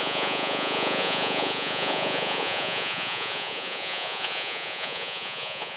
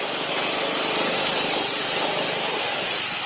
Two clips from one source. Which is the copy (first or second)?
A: first